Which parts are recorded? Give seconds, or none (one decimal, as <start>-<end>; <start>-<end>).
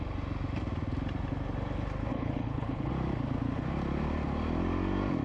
0.0-2.1; 2.9-5.2